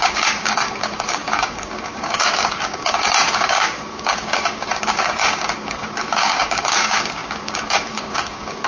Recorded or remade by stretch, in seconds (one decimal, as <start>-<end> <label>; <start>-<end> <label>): 0.0-8.7 remade